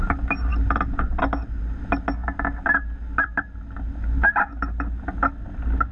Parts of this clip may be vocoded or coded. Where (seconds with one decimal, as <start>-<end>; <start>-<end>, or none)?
none